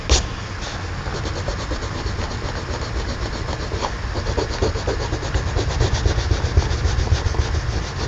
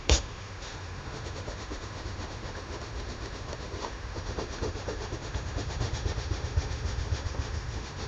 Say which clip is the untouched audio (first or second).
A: first